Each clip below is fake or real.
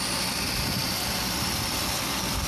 fake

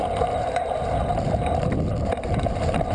fake